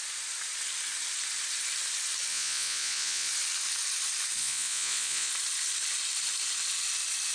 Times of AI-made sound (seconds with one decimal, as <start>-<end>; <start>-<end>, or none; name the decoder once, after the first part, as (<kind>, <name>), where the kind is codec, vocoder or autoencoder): 2.3-3.3 (vocoder, Vocos); 4.4-5.3